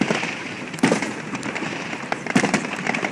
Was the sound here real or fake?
fake